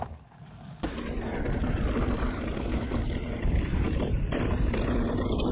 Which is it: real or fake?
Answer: fake